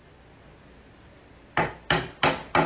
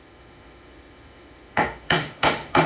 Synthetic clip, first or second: second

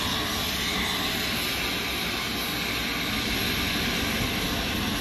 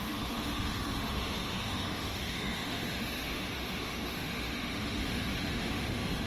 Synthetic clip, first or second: second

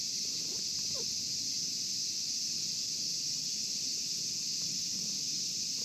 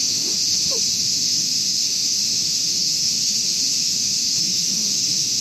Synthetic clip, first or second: second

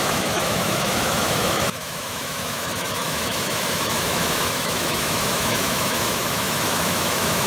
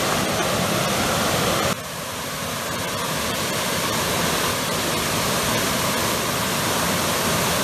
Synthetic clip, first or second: first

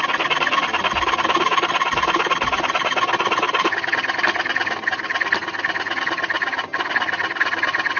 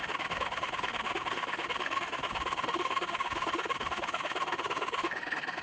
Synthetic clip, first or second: second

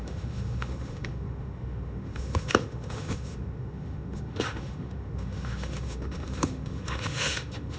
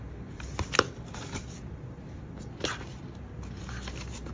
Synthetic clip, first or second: first